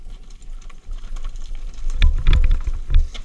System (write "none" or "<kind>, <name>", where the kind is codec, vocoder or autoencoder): none